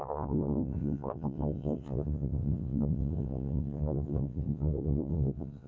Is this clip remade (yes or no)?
yes